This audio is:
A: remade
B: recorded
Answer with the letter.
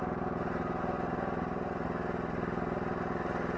B